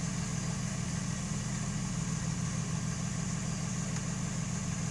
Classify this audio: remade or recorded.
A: recorded